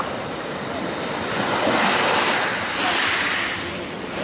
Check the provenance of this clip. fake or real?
real